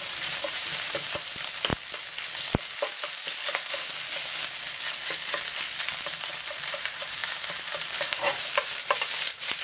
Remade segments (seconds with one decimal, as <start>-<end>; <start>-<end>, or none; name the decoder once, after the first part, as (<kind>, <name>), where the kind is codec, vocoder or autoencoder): 0.0-1.7 (vocoder, BigVGAN v2); 6.0-9.6